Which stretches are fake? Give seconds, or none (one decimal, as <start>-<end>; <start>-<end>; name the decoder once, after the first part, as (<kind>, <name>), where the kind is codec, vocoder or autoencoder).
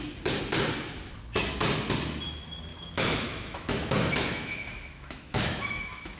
2.7-6.2 (autoencoder, DAC-VAE)